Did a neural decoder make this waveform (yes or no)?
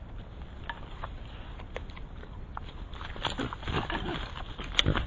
no